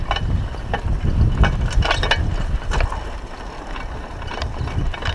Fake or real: real